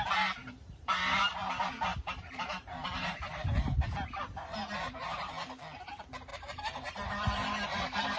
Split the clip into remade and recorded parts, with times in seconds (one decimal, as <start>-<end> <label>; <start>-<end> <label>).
0.0-0.4 recorded; 0.4-1.0 remade; 1.0-1.9 recorded; 1.9-5.3 remade; 5.3-6.3 recorded; 6.3-8.2 remade